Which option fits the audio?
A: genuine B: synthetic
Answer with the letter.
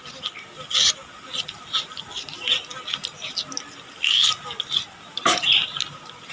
A